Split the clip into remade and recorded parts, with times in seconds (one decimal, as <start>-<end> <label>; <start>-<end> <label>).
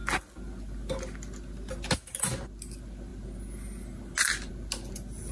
0.0-5.3 recorded